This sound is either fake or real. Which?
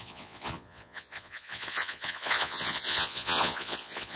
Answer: fake